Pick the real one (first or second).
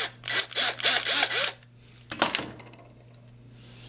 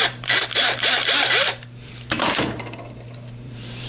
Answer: first